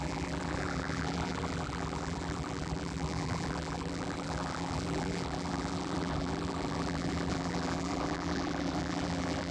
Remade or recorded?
remade